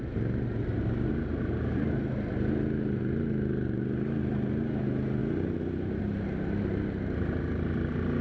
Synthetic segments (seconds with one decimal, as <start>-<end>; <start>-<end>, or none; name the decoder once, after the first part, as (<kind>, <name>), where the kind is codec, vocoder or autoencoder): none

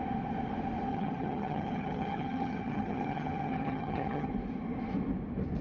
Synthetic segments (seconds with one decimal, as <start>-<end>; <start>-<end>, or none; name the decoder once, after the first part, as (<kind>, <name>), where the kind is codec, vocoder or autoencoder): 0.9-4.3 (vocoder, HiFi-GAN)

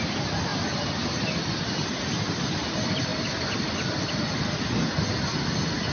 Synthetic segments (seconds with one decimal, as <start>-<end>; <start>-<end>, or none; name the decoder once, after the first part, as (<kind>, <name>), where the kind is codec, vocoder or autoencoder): none

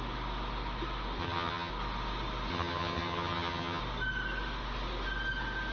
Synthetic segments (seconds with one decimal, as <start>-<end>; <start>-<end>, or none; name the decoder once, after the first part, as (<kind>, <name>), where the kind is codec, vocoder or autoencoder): 1.2-1.7 (vocoder, HiFi-GAN); 2.5-3.8

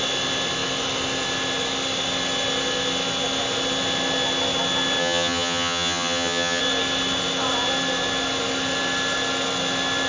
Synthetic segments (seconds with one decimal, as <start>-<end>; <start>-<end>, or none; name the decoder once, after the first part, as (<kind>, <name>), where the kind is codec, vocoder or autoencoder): 5.0-6.6 (vocoder, HiFi-GAN)

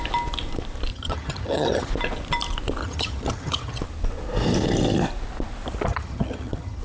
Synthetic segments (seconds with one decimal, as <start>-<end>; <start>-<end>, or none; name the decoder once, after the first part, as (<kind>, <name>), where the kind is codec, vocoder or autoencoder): 0.9-1.9 (vocoder, HiFi-GAN); 2.8-3.8; 5.9-6.8

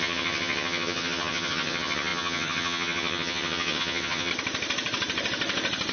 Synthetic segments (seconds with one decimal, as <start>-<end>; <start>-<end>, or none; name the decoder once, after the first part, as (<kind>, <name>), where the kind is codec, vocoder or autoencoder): 0.0-4.3 (vocoder, HiFi-GAN)

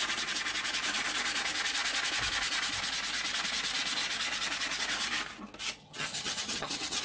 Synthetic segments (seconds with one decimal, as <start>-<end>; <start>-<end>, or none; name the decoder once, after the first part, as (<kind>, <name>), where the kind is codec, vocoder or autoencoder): 5.8-7.0 (vocoder, HiFi-GAN)